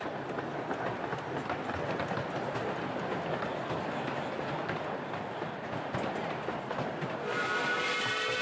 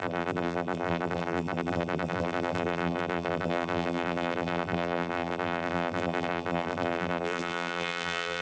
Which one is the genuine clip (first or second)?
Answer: first